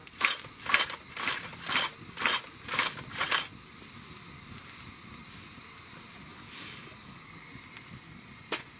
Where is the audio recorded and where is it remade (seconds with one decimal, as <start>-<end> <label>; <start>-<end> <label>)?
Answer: 0.0-6.3 recorded; 6.3-7.3 remade; 7.3-8.8 recorded